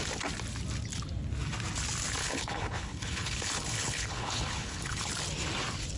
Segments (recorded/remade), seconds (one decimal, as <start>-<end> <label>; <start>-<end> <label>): 0.0-2.2 recorded; 2.2-5.1 remade; 5.1-6.0 recorded

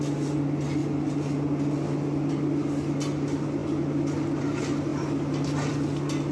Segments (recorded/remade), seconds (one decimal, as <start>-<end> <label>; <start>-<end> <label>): 0.0-6.3 recorded